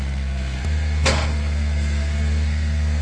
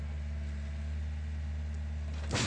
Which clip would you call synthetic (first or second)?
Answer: first